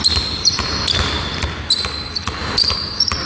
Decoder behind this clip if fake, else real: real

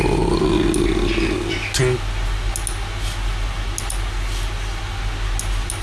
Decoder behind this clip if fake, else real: real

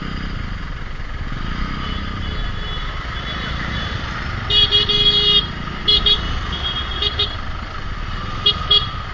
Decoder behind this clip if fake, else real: real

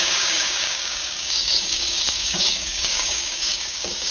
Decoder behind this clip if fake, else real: fake, codec, DAC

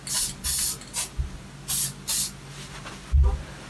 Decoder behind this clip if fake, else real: real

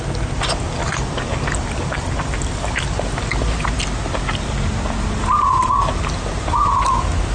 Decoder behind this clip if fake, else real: real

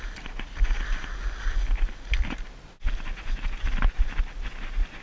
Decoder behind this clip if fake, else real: real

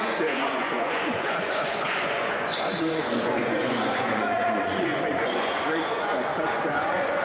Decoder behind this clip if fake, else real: fake, vocoder, Vocos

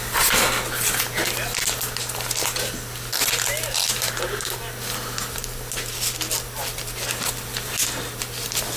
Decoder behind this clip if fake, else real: real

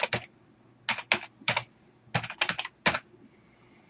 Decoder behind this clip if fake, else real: real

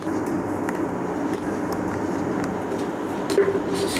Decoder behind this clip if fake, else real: real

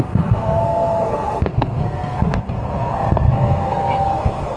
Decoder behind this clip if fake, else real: fake, codec, SNAC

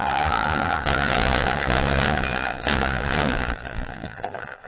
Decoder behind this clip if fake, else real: fake, vocoder, Vocos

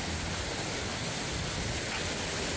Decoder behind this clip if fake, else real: real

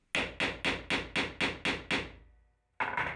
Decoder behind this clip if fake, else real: real